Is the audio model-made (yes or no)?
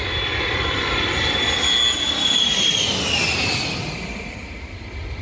no